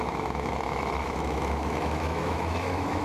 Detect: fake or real fake